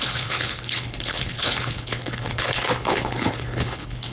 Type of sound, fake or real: fake